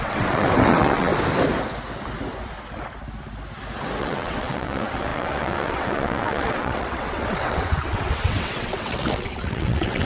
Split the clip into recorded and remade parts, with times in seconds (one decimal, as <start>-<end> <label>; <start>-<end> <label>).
0.0-1.1 remade; 1.1-4.0 recorded; 4.0-10.0 remade